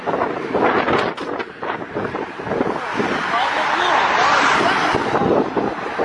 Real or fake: real